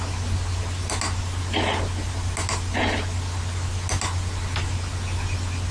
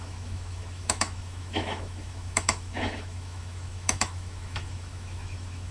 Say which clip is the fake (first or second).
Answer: second